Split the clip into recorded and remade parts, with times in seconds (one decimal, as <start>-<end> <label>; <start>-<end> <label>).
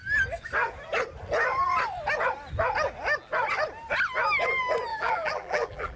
0.0-4.9 recorded; 4.9-6.0 remade